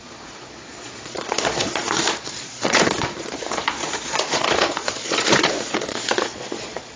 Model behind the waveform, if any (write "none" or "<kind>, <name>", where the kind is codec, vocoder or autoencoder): vocoder, Vocos